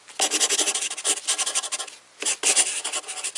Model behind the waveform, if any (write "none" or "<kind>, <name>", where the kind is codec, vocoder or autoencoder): none